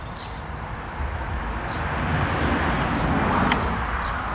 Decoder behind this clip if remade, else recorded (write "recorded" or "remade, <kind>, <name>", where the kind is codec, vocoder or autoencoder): recorded